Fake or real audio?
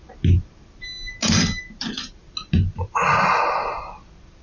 real